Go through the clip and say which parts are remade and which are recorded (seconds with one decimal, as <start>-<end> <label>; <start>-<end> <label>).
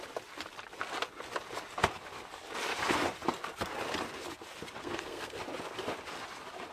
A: 0.0-4.8 recorded; 4.8-5.4 remade; 5.4-6.7 recorded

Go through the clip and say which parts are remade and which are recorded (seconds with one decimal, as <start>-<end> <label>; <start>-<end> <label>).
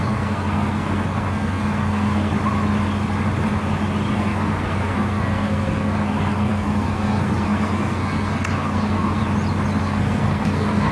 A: 0.0-2.3 remade; 2.3-4.1 recorded; 4.1-9.2 remade; 9.2-9.8 recorded; 9.8-10.9 remade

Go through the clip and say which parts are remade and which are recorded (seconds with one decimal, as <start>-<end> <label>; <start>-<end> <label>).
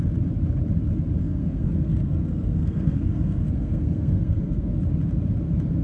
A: 0.0-1.2 recorded; 1.2-4.7 remade; 4.7-5.8 recorded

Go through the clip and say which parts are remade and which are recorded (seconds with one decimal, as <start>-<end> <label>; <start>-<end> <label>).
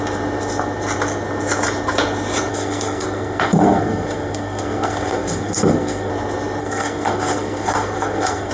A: 0.0-2.5 recorded; 2.5-6.1 remade; 6.1-6.6 recorded; 6.6-8.5 remade